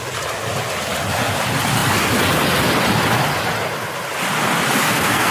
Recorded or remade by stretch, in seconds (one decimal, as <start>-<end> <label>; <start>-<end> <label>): 0.0-4.8 recorded; 4.8-5.3 remade